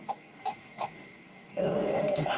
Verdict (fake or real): fake